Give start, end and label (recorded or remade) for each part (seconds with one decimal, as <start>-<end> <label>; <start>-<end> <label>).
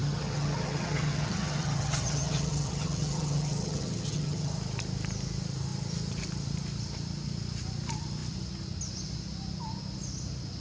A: 0.0-4.5 remade; 4.5-10.6 recorded